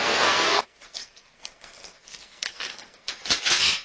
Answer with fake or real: fake